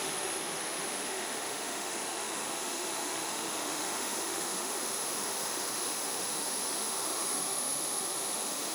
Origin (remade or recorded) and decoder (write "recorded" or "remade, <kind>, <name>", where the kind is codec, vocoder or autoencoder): remade, autoencoder, DAC-VAE